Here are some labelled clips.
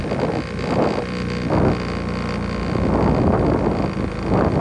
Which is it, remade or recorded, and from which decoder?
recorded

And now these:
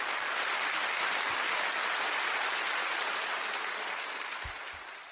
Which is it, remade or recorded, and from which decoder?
remade, vocoder, BigVGAN v2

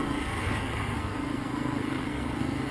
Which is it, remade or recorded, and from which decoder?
remade, codec, SNAC